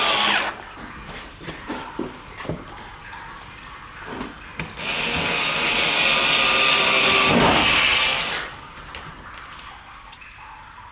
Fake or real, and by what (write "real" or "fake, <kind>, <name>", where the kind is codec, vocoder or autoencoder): real